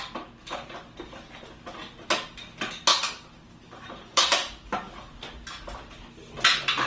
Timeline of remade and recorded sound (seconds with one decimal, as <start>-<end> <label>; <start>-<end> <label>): 0.0-2.9 recorded; 2.9-4.9 remade; 4.9-6.9 recorded